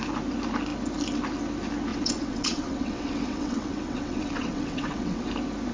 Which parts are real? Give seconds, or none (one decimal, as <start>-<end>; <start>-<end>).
0.0-1.9; 5.3-5.7